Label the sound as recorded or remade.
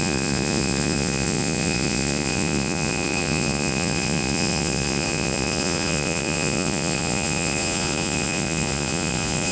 remade